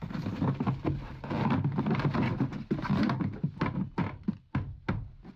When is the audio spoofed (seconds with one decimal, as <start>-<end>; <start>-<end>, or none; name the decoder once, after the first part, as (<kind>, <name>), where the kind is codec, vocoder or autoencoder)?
none

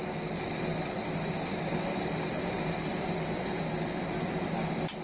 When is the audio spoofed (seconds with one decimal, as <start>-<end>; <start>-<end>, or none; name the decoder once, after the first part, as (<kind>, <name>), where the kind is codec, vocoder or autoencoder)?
none

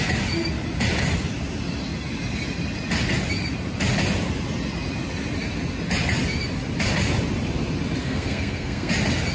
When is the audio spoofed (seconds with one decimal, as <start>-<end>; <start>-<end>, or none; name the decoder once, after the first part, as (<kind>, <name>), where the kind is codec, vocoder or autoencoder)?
8.0-8.9 (codec, SNAC)

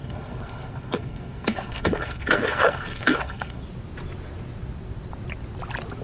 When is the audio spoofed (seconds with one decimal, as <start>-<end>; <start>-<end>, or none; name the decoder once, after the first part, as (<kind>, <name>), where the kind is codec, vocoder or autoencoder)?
0.0-3.6 (codec, SNAC)